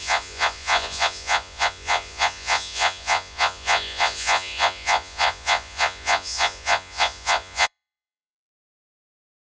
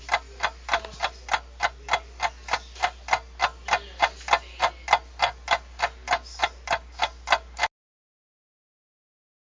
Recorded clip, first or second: second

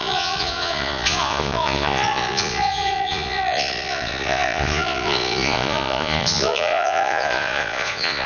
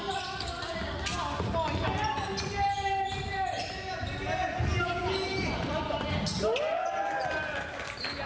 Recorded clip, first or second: second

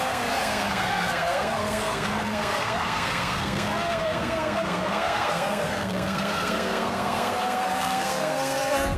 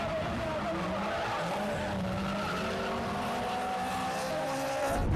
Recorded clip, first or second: second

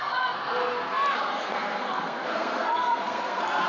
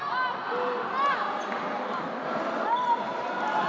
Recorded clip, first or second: second